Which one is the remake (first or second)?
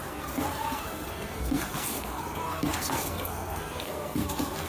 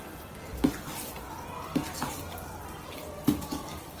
first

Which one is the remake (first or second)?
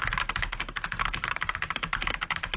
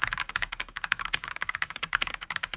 second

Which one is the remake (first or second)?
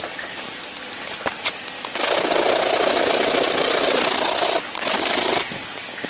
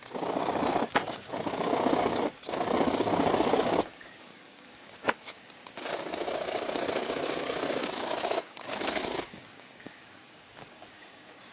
second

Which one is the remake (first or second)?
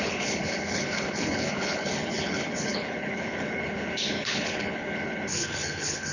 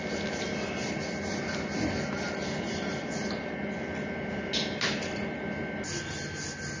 first